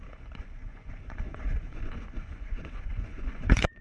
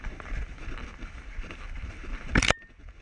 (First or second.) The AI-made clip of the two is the first